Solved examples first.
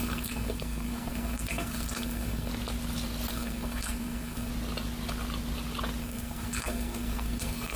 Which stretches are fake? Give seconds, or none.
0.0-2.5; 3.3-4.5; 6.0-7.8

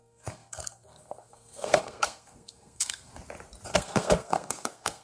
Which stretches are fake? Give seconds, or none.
0.0-3.1; 3.7-5.0

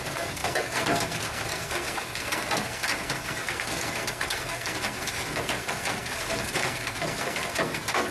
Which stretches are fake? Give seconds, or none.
0.0-8.1

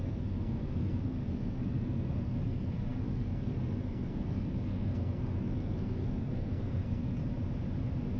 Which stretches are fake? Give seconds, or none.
0.0-7.2

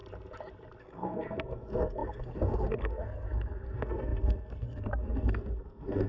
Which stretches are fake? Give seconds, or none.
0.8-6.1

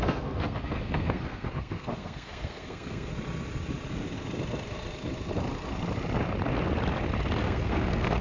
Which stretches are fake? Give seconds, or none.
0.0-3.1; 7.4-8.2